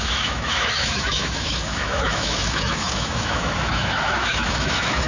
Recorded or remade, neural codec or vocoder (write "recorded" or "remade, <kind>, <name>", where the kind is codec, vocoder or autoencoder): remade, autoencoder, DAC-VAE